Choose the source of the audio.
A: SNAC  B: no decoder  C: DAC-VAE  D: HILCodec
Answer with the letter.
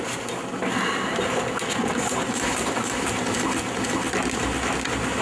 B